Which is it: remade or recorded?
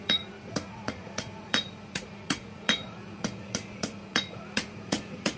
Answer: remade